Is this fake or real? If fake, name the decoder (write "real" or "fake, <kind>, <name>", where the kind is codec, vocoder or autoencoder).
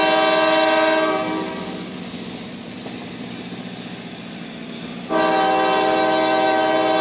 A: real